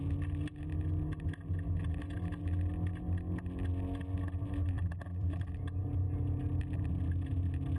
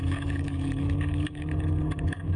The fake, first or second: second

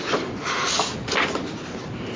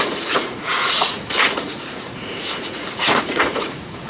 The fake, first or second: second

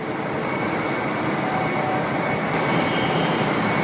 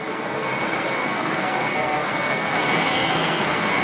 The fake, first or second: second